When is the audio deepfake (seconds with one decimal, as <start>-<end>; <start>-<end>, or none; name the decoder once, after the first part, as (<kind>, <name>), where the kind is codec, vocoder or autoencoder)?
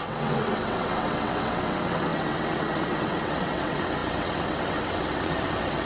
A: 0.0-5.9 (vocoder, WaveNeXt)